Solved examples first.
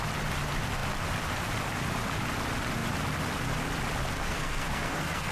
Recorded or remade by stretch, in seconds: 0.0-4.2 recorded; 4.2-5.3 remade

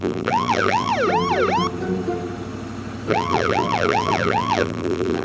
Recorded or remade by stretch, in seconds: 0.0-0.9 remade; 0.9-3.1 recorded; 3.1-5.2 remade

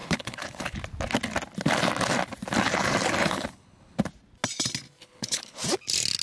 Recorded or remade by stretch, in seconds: 0.0-0.8 remade; 0.8-3.2 recorded; 3.2-4.0 remade; 4.0-5.0 recorded; 5.0-5.6 remade; 5.6-6.2 recorded

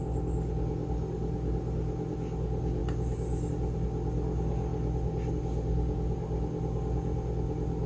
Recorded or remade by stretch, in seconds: 0.0-7.9 recorded